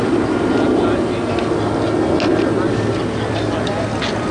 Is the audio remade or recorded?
recorded